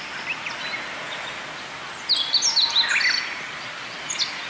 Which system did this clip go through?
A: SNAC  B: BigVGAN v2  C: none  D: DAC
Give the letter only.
C